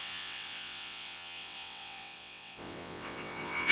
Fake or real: fake